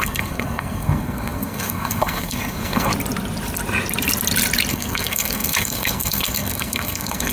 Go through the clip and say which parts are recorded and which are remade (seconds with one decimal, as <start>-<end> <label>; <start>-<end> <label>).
0.0-2.9 remade; 2.9-4.7 recorded; 4.7-7.3 remade